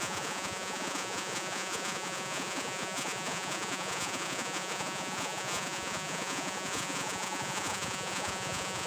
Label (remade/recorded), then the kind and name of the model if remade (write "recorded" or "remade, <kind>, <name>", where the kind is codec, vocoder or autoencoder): remade, vocoder, Vocos